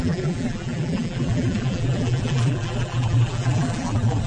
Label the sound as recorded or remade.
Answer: remade